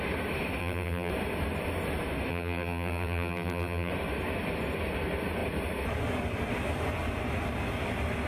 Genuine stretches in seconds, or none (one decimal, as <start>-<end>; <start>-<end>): 0.0-0.6; 1.1-2.3; 3.9-8.3